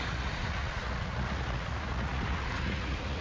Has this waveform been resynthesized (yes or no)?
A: yes